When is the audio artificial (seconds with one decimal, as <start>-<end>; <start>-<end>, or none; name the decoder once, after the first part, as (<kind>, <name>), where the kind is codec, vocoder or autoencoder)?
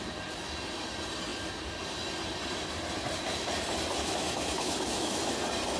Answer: 4.0-5.2 (autoencoder, DAC-VAE)